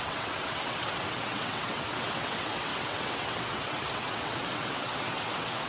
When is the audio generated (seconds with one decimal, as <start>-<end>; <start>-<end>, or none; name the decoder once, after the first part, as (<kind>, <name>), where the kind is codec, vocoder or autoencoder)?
0.0-5.7 (vocoder, WaveNeXt)